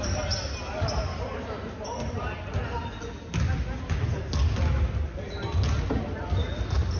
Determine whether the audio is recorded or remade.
recorded